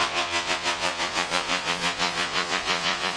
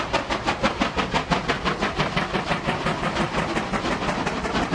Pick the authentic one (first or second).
second